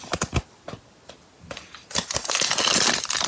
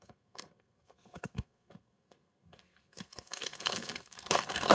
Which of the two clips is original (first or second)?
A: first